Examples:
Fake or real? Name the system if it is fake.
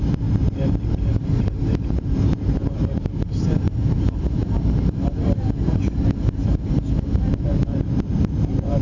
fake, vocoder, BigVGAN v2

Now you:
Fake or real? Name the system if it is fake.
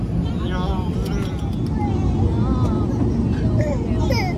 real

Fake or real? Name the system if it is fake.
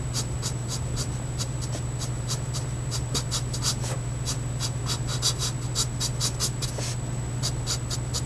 real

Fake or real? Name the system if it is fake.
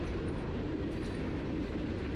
real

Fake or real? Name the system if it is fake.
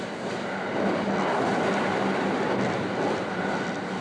real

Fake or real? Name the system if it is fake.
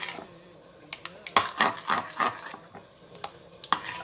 real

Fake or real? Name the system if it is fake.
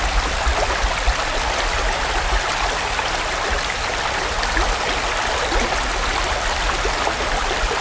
real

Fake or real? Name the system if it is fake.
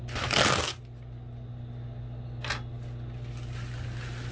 real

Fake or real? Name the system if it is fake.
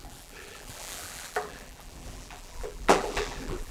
fake, vocoder, BigVGAN v2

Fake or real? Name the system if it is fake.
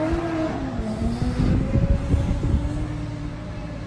real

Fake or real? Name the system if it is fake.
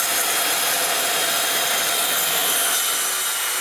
fake, vocoder, BigVGAN v2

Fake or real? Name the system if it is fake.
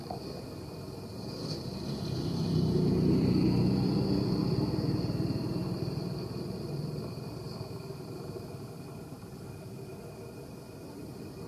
fake, vocoder, BigVGAN v2